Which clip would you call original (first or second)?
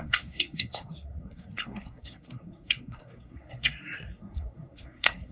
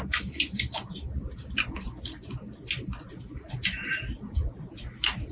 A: second